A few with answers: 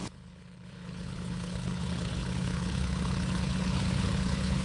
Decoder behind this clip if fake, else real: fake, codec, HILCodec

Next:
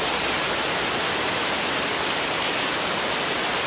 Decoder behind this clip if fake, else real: real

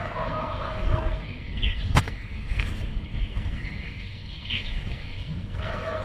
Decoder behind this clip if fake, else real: fake, codec, SNAC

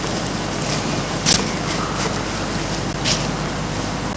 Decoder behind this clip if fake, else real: real